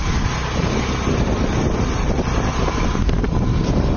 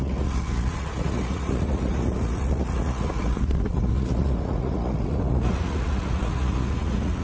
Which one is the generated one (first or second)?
second